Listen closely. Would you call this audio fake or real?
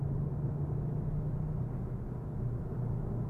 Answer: real